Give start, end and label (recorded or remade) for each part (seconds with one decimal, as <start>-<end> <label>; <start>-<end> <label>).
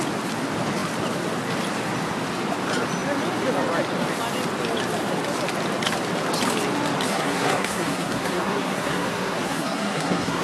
0.0-7.1 recorded; 7.1-10.4 remade